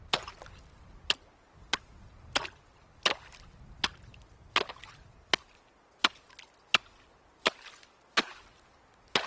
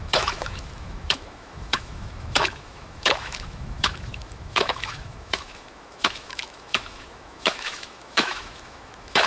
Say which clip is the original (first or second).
first